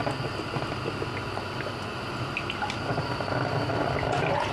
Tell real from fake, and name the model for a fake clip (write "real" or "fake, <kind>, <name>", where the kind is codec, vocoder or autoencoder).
real